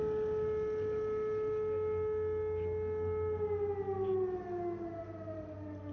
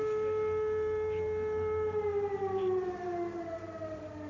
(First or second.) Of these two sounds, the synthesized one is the second